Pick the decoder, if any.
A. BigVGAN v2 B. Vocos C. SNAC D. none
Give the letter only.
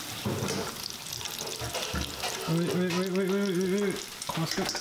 D